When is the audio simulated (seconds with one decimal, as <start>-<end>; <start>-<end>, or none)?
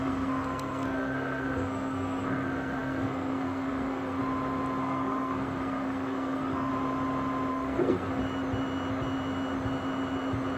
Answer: 0.0-4.2; 4.8-6.7; 7.5-8.2